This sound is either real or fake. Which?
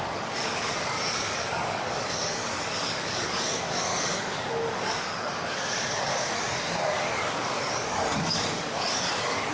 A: fake